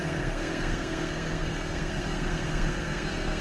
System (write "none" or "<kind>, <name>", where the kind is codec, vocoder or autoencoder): codec, SNAC